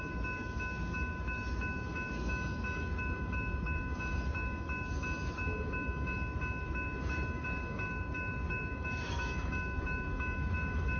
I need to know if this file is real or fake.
fake